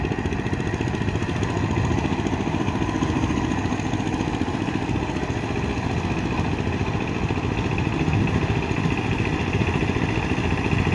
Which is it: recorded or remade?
recorded